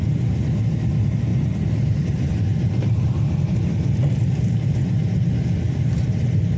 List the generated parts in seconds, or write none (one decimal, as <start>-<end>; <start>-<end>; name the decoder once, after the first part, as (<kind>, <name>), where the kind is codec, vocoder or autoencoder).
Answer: 1.3-5.3 (vocoder, BigVGAN v2)